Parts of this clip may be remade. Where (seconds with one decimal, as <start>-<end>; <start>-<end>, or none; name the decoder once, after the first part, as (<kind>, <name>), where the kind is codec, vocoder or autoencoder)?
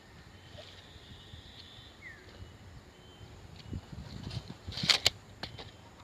none